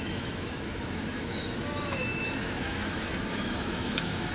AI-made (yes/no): yes